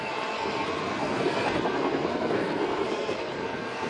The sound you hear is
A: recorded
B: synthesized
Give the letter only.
B